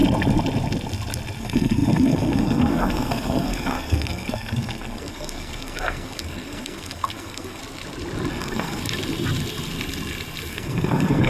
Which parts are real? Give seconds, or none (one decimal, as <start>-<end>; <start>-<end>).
0.0-1.4; 7.6-8.3; 8.8-10.5